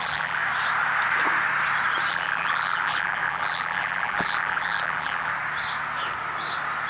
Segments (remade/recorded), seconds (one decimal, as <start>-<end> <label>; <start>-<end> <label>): 0.0-0.4 remade; 0.4-2.1 recorded; 2.1-5.3 remade; 5.3-6.9 recorded